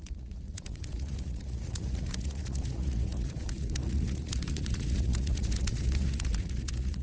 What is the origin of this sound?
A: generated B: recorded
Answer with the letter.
A